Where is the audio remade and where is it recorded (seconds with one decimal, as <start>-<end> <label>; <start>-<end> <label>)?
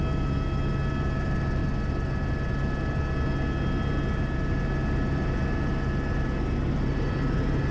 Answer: 0.0-7.7 recorded